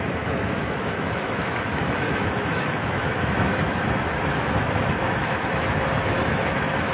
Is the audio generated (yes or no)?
yes